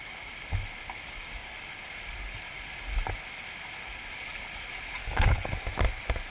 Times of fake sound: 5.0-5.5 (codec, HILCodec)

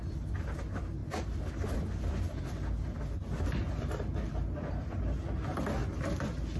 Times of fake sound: none